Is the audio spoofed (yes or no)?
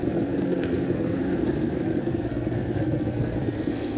yes